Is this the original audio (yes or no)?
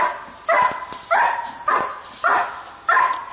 yes